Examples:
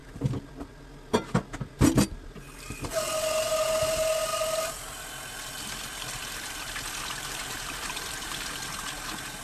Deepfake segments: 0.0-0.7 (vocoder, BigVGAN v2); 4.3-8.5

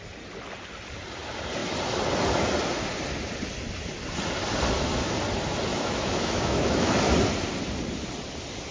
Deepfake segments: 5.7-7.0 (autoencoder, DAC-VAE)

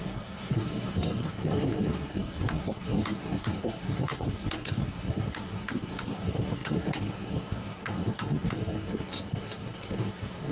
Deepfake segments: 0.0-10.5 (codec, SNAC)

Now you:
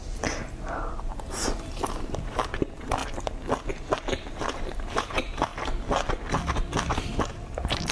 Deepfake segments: 0.0-3.0 (vocoder, BigVGAN v2); 4.3-5.5; 6.9-7.9

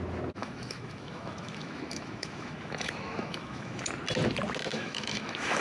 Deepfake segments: 0.4-3.8 (autoencoder, DAC-VAE); 4.7-5.6